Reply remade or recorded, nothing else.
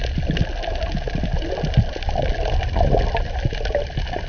recorded